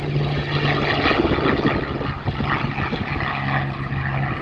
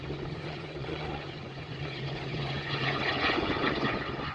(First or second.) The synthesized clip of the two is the second